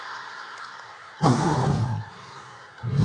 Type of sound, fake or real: fake